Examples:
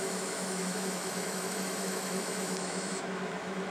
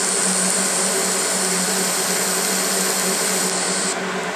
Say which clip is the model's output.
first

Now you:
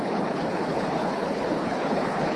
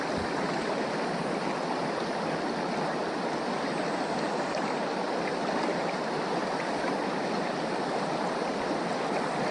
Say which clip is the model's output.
first